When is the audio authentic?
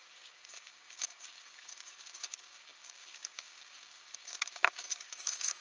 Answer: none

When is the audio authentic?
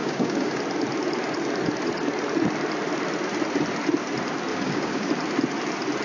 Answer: 0.6-4.5; 5.1-6.0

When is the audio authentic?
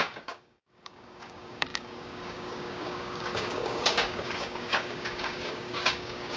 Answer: none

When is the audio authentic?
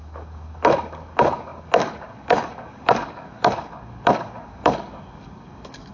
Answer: none